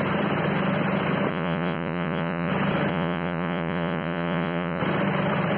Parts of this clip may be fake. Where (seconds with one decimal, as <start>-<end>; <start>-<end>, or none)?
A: 1.3-2.5; 2.9-4.8